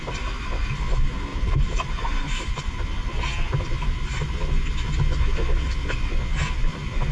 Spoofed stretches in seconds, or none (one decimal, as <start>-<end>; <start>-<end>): 1.3-2.7